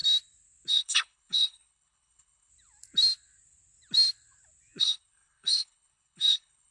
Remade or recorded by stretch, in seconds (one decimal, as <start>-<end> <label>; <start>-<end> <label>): 0.0-0.7 recorded; 0.7-2.5 remade; 2.5-4.8 recorded; 4.8-6.7 remade